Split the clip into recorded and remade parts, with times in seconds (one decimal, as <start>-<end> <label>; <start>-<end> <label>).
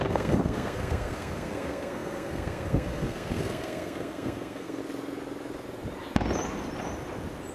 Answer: 0.0-4.8 remade; 4.8-7.5 recorded